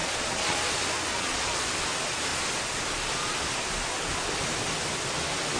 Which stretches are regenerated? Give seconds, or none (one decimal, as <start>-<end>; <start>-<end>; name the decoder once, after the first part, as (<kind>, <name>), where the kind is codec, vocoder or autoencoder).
0.0-0.6 (vocoder, Vocos); 1.1-1.7